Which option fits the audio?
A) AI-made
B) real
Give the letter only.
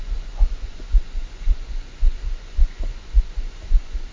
A